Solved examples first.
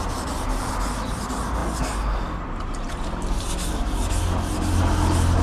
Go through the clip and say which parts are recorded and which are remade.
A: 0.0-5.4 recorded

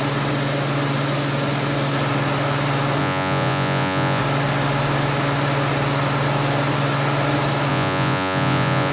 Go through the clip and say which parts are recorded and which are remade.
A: 0.0-3.0 recorded; 3.0-4.2 remade; 4.2-7.7 recorded; 7.7-8.9 remade

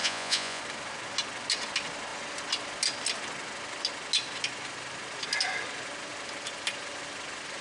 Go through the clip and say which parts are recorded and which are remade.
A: 0.0-0.6 remade; 0.6-7.6 recorded

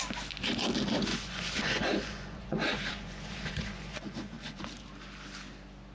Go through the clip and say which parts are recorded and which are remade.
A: 0.0-1.1 recorded; 1.1-4.6 remade; 4.6-5.9 recorded

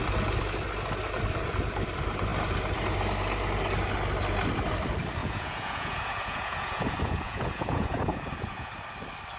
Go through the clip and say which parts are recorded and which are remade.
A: 0.0-5.2 recorded; 5.2-8.7 remade; 8.7-9.4 recorded

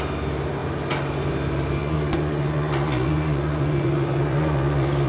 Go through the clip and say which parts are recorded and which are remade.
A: 0.0-1.8 recorded; 1.8-5.1 remade

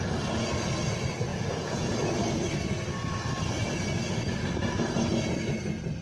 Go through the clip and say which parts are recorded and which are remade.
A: 0.0-1.3 recorded; 1.3-1.9 remade; 1.9-6.0 recorded

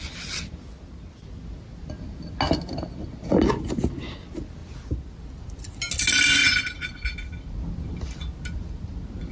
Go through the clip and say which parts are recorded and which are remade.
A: 0.0-9.3 recorded